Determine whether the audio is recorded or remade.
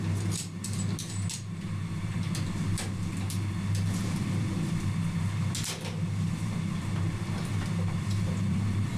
recorded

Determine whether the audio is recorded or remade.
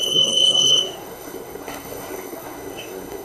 remade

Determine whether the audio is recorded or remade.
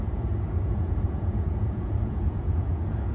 remade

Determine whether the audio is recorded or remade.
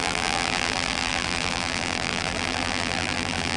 remade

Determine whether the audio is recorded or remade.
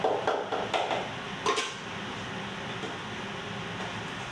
recorded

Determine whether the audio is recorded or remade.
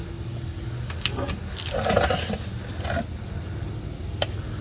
recorded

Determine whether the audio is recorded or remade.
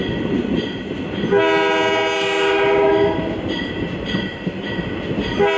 recorded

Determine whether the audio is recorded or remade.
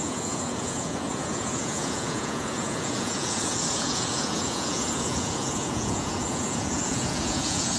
remade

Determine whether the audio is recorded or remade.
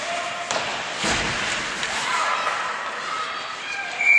recorded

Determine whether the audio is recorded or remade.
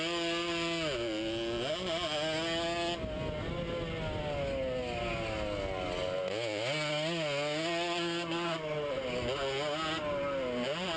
recorded